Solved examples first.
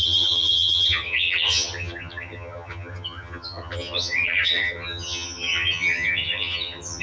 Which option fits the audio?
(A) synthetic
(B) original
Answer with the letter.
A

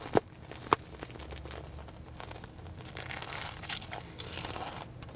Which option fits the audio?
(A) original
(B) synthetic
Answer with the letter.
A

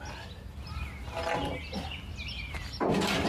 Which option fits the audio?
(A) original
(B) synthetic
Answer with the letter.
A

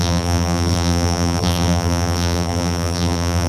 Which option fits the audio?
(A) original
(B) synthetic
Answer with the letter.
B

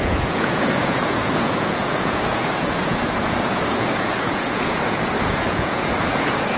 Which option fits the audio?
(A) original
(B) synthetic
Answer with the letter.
B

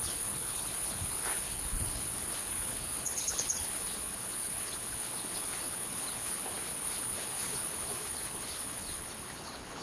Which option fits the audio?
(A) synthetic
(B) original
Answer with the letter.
A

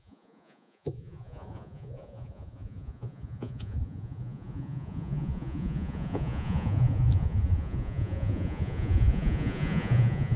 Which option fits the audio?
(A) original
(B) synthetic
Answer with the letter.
B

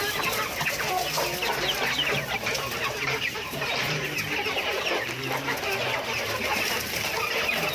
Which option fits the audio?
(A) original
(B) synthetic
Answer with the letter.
A